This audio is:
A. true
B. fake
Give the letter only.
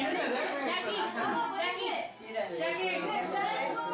A